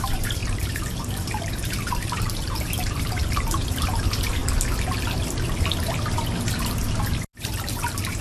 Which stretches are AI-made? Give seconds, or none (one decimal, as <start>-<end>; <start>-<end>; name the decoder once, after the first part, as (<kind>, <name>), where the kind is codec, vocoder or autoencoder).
0.0-4.4 (vocoder, BigVGAN v2); 6.6-8.2

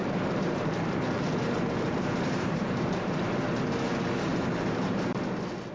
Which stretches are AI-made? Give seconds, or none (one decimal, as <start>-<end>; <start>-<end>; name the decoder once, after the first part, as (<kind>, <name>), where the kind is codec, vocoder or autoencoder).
0.0-3.4 (vocoder, BigVGAN v2); 4.3-5.1

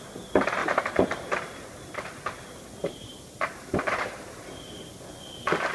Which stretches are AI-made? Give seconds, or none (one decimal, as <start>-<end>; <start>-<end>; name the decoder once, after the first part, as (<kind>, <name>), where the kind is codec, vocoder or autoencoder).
0.6-1.4 (vocoder, BigVGAN v2); 2.8-4.9